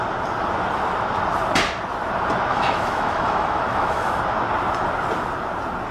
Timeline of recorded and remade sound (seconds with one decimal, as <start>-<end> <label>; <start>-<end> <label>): 0.0-2.5 recorded; 2.5-4.2 remade; 4.2-5.9 recorded